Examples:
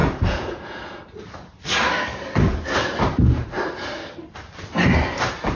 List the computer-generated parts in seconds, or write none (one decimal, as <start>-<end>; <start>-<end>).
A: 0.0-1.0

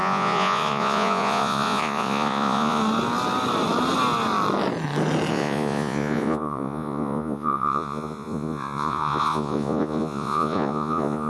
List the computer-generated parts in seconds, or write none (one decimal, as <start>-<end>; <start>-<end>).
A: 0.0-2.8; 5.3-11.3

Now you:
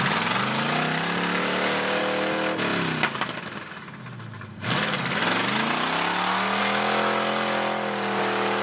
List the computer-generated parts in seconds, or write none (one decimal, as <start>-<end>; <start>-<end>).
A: 1.4-2.0

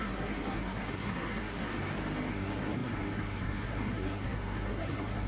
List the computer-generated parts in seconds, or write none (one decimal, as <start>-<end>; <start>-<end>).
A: 0.0-1.7; 2.3-5.3

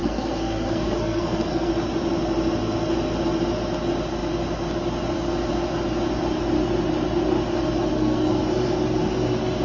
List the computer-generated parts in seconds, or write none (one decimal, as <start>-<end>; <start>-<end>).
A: 0.0-1.7; 7.9-8.4

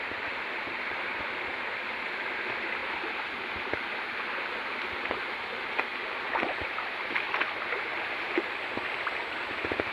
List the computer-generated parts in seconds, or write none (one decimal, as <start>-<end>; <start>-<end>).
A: none